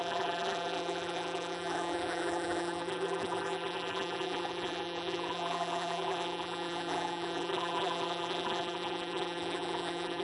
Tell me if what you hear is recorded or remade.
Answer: remade